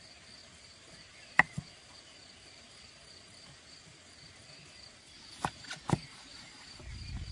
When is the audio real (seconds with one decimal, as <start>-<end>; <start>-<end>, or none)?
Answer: 0.0-7.3